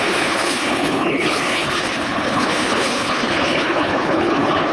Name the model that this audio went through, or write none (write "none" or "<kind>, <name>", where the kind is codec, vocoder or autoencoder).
codec, HILCodec